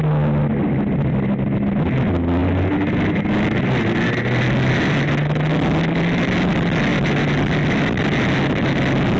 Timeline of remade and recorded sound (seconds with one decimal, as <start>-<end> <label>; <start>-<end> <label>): 0.0-9.2 recorded